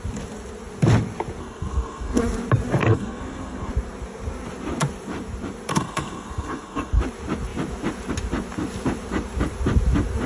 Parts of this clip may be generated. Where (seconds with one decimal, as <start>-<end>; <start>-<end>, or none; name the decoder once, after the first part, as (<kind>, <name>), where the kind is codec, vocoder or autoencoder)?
1.4-2.2 (codec, SNAC); 2.8-3.7; 5.7-7.0